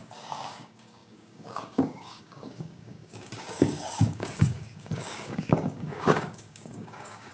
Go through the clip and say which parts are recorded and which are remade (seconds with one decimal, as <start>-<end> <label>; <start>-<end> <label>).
0.0-7.3 remade